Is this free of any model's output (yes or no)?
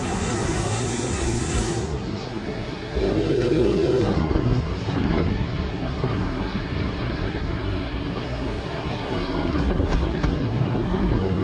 no